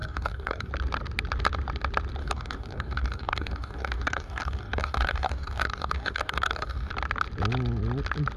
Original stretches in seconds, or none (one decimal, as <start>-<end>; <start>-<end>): 0.7-2.2; 6.9-8.4